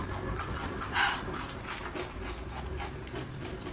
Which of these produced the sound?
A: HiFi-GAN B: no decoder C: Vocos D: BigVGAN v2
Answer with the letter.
B